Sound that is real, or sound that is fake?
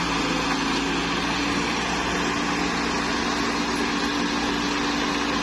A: real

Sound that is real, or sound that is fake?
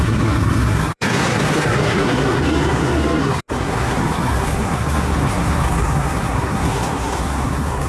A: fake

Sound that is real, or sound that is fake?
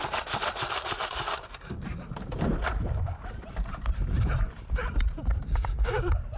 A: fake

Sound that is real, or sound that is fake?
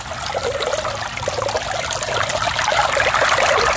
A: real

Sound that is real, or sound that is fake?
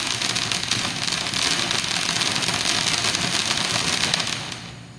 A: real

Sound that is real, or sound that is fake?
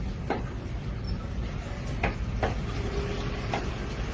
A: real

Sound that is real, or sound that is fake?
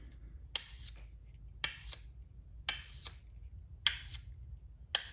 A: real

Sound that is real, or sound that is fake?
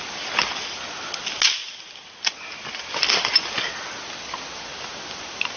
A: real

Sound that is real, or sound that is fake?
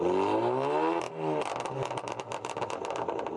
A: real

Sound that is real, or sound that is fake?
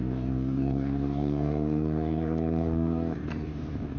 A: fake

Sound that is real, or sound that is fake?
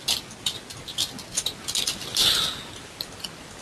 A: real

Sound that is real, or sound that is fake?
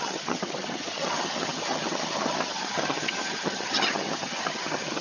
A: fake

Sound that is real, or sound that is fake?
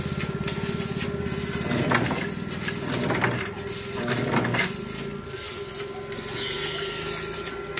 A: real